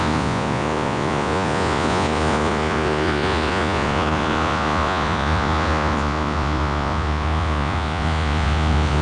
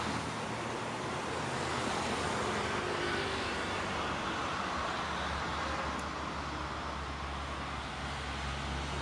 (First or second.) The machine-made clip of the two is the first